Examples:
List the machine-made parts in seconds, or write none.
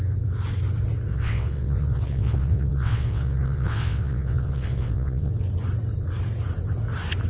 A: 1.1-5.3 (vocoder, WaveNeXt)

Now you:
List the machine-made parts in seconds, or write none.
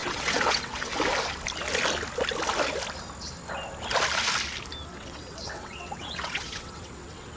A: 0.0-0.9 (vocoder, WaveNeXt); 4.9-7.4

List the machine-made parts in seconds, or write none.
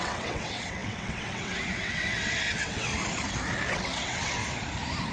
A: 0.0-2.9 (vocoder, WaveNeXt); 3.7-4.4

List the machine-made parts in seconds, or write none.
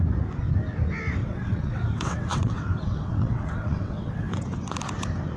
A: 1.2-4.4 (vocoder, WaveNeXt)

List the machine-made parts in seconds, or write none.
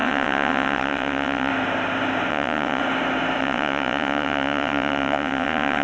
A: 0.0-1.5 (vocoder, WaveNeXt); 2.3-2.8; 3.4-5.8